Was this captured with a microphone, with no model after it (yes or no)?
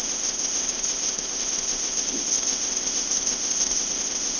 no